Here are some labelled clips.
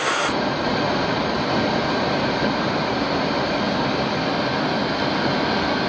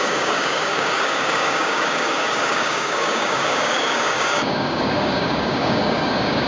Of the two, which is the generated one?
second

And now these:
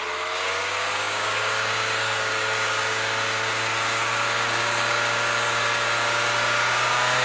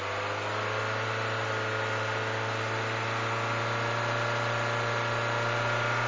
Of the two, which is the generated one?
first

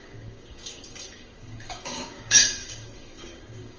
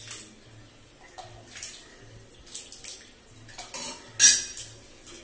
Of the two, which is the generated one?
first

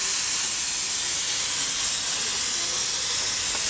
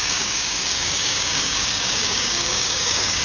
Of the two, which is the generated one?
second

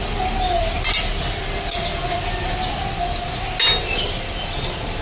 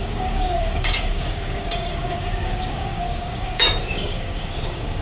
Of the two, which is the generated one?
second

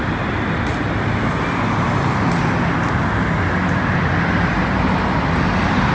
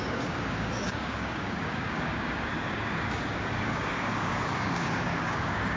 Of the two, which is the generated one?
second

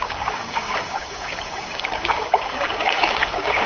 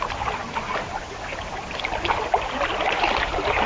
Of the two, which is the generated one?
first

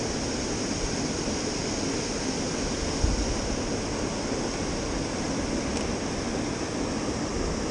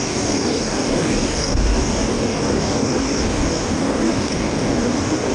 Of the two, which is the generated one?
second